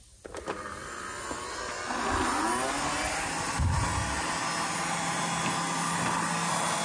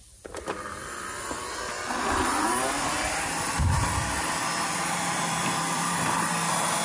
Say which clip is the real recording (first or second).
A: first